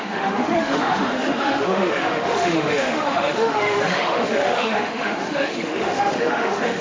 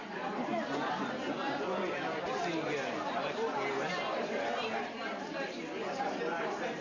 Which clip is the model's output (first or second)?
first